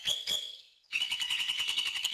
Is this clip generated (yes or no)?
yes